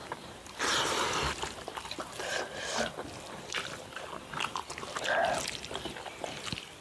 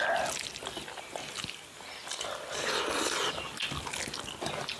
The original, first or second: second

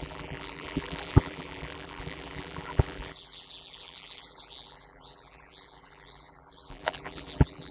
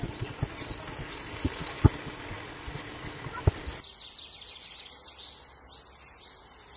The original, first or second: second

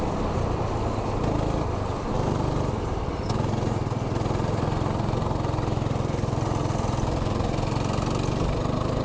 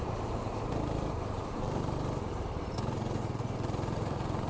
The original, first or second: first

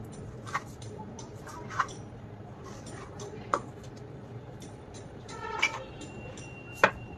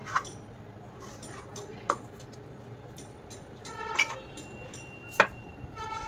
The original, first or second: second